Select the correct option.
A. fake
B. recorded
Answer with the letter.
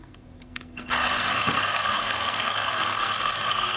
A